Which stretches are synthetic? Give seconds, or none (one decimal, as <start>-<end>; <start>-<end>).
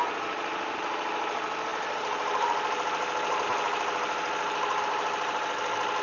none